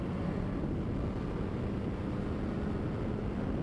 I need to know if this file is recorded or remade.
recorded